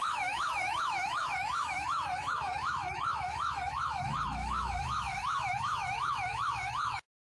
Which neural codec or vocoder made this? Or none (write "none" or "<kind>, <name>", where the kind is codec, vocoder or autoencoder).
autoencoder, DAC-VAE